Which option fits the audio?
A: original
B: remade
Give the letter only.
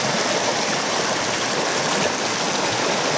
A